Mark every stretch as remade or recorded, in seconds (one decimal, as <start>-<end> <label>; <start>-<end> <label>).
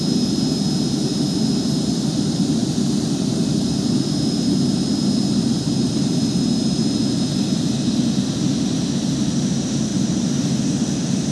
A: 0.0-9.9 recorded; 9.9-10.6 remade; 10.6-11.3 recorded